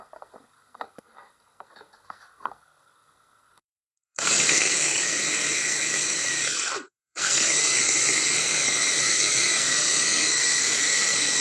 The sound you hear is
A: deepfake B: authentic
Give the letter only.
A